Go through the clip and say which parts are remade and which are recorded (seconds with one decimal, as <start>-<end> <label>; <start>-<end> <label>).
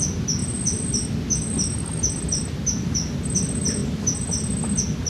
0.0-5.1 recorded